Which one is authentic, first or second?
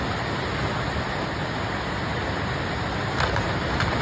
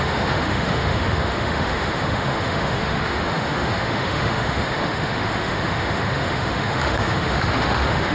first